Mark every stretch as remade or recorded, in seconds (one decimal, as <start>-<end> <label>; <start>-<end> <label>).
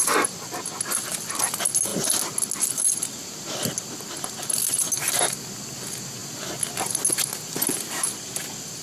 0.0-8.8 recorded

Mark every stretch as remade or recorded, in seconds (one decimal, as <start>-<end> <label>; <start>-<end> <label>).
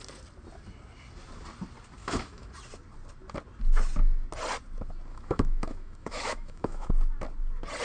0.0-2.0 recorded; 2.0-2.5 remade; 2.5-5.1 recorded; 5.1-6.9 remade; 6.9-7.8 recorded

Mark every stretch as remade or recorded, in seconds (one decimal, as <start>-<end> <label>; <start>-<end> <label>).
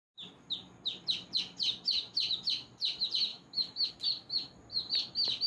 0.0-3.3 recorded; 3.3-3.9 remade; 3.9-5.5 recorded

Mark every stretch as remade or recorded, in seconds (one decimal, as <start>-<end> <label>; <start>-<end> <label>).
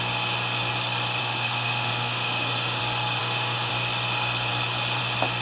0.0-1.2 recorded; 1.2-2.8 remade; 2.8-3.2 recorded; 3.2-3.7 remade; 3.7-5.4 recorded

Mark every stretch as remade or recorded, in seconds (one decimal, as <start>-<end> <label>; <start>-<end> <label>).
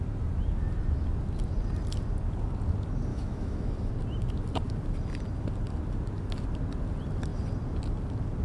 0.0-3.1 recorded; 3.1-3.9 remade; 3.9-8.4 recorded